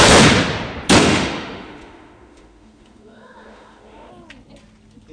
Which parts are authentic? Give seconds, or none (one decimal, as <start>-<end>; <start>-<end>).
0.0-1.0; 4.1-5.1